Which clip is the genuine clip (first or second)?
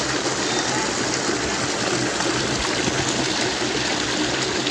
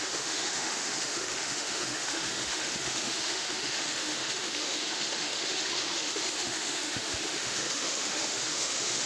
first